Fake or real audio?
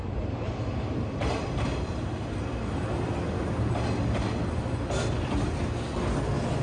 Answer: real